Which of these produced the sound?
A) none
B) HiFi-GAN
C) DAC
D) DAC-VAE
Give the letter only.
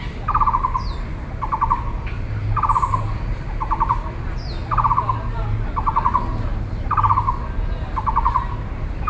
A